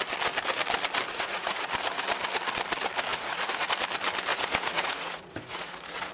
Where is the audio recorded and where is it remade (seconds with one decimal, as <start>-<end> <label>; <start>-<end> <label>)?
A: 0.0-1.1 recorded; 1.1-1.7 remade; 1.7-3.1 recorded; 3.1-3.7 remade; 3.7-4.3 recorded; 4.3-6.1 remade